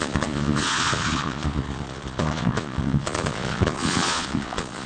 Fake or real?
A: fake